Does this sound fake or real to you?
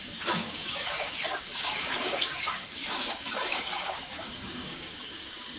fake